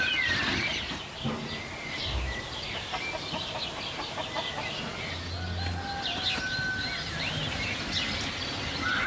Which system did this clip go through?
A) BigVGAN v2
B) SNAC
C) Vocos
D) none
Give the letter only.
D